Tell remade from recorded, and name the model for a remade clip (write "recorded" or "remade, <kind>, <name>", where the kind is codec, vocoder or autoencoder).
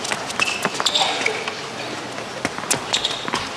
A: recorded